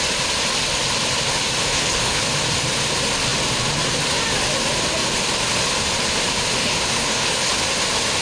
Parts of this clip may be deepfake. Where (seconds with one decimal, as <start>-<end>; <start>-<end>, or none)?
1.6-2.2; 6.6-7.5